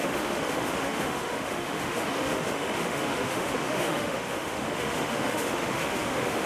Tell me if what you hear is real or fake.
fake